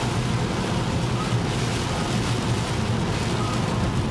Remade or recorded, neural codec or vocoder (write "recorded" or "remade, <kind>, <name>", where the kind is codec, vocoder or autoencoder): recorded